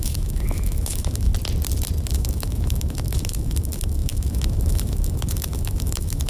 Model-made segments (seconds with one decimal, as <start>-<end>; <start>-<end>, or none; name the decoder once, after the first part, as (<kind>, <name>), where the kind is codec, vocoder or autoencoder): 0.0-1.3 (autoencoder, DAC-VAE); 2.1-6.3